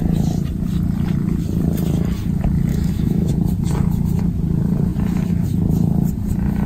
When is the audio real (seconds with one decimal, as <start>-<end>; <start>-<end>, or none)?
0.0-2.7; 3.3-6.7